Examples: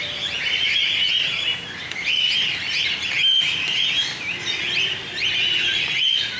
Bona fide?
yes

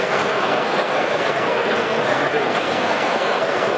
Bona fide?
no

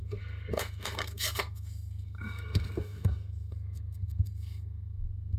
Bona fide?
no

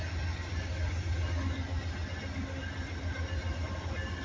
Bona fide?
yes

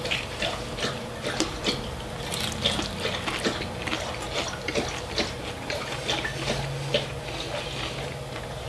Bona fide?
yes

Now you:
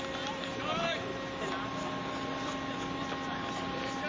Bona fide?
yes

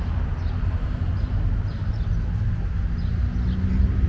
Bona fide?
yes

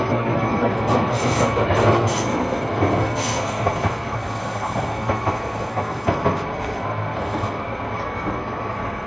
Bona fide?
no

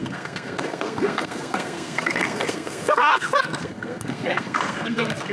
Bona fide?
no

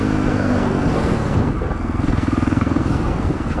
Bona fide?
no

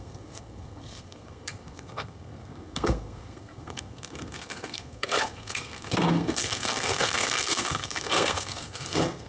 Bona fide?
no